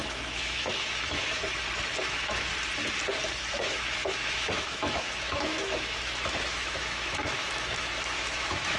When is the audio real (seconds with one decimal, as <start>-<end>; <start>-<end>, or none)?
1.4-2.0; 2.5-3.5